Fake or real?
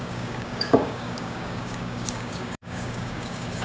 fake